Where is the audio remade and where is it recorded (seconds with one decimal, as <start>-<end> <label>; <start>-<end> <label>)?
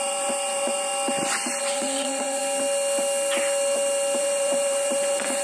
0.0-0.9 remade; 0.9-1.6 recorded; 1.6-2.4 remade; 2.4-4.2 recorded; 4.2-5.4 remade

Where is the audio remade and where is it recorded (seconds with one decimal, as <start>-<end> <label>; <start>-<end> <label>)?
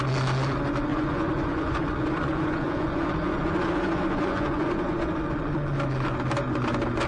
0.0-0.9 recorded; 0.9-5.2 remade; 5.2-7.1 recorded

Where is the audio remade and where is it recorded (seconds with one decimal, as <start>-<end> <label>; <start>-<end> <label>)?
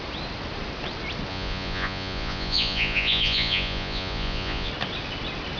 0.0-1.3 recorded; 1.3-4.7 remade; 4.7-5.6 recorded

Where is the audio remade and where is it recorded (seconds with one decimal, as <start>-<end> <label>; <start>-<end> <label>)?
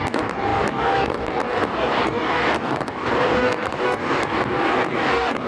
0.0-5.5 remade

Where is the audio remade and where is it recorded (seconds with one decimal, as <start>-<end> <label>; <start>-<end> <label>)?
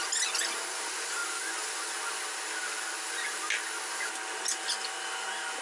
0.0-5.6 recorded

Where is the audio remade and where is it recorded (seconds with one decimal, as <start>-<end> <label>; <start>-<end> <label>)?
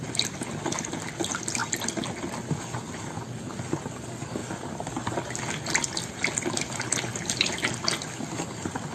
0.0-8.9 recorded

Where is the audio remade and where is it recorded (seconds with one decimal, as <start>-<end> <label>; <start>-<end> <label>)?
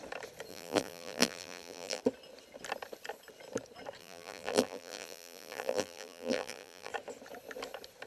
0.0-0.5 recorded; 0.5-2.0 remade; 2.0-4.0 recorded; 4.0-6.9 remade; 6.9-8.1 recorded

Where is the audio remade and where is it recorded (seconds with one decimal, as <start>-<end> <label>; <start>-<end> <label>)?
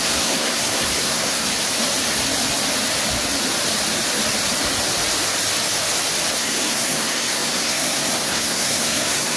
0.0-1.5 remade; 1.5-6.3 recorded; 6.3-9.4 remade